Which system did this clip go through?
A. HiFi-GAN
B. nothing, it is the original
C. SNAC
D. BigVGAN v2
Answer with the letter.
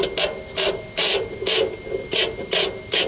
B